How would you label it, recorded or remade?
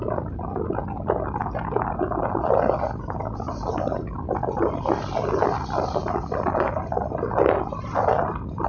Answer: recorded